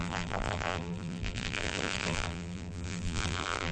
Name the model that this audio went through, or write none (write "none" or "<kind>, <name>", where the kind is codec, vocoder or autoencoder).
vocoder, BigVGAN v2